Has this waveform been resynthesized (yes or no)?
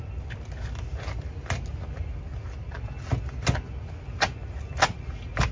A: no